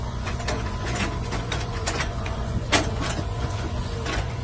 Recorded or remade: remade